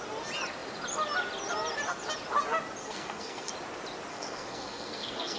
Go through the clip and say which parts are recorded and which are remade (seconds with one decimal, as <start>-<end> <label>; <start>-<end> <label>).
0.0-2.8 recorded; 2.8-3.5 remade; 3.5-4.1 recorded; 4.1-5.4 remade